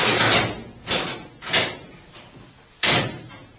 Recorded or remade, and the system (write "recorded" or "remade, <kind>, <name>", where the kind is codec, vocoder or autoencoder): recorded